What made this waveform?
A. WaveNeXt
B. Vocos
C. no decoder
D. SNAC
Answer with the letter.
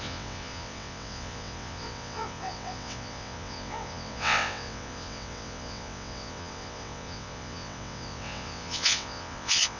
A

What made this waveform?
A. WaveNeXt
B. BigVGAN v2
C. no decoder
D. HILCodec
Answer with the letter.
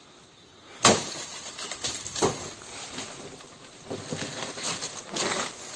C